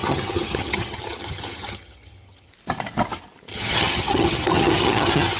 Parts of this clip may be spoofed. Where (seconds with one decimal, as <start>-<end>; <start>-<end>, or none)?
0.0-2.5; 3.5-5.4